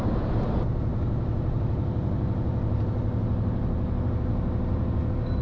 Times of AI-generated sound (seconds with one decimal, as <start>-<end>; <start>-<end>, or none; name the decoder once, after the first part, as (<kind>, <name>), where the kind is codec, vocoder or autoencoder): none